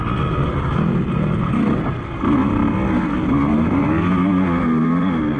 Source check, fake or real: real